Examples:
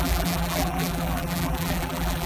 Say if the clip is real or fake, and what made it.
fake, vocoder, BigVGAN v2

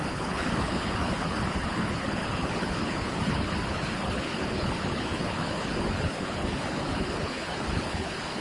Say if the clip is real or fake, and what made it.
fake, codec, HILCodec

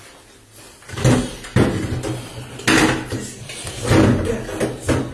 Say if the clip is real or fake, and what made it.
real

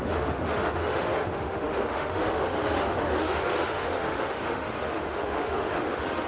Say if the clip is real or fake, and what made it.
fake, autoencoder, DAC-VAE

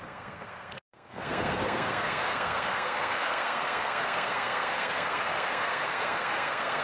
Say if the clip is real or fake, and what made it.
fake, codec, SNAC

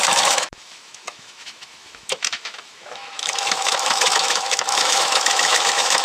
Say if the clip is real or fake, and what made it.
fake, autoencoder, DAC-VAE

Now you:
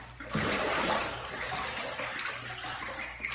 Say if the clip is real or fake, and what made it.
real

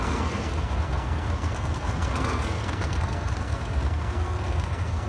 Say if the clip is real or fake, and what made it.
fake, codec, SNAC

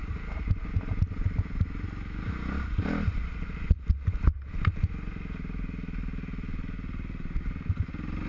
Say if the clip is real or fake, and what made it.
real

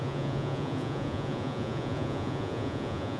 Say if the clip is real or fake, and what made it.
fake, vocoder, Vocos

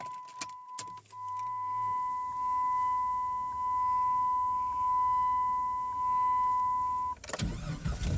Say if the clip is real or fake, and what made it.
real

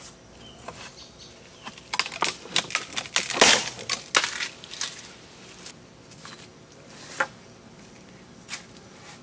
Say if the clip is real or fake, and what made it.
real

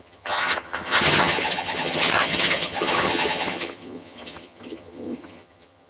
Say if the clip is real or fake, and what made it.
fake, vocoder, HiFi-GAN